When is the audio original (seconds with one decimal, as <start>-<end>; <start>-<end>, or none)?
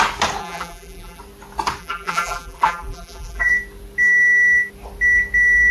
0.0-0.4; 1.2-1.8; 3.5-5.7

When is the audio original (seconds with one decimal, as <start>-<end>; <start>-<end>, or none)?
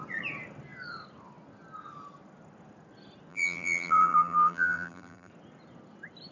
0.0-3.3; 5.3-6.3